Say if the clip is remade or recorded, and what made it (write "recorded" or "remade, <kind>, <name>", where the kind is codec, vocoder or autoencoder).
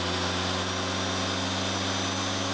recorded